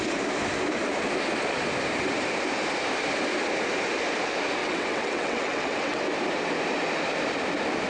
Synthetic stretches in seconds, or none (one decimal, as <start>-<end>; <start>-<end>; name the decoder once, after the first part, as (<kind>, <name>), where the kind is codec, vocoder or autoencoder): 4.6-6.0 (vocoder, WaveNeXt)

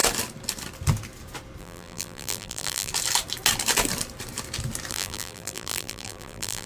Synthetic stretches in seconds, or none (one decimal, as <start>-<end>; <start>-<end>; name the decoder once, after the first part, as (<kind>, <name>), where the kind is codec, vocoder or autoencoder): 1.6-2.9 (vocoder, BigVGAN v2); 4.9-6.7

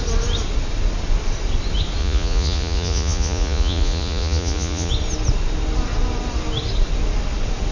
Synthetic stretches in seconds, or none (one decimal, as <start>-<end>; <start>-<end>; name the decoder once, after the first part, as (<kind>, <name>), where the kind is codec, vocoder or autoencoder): 2.0-4.9 (vocoder, Vocos)